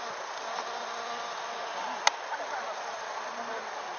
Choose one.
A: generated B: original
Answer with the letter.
B